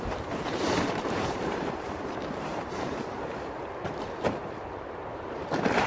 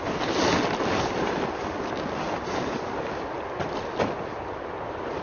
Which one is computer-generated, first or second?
first